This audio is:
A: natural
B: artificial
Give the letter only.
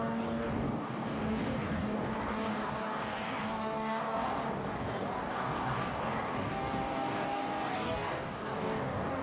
B